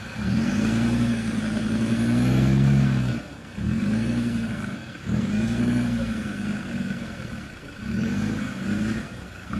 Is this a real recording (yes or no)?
no